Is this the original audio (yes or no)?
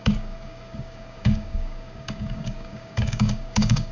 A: no